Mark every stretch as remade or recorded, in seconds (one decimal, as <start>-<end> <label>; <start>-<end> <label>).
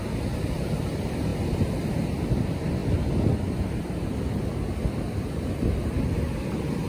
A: 0.0-6.9 recorded